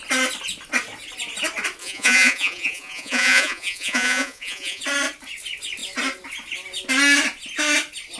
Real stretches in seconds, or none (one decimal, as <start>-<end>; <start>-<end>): 0.0-1.8; 4.8-8.2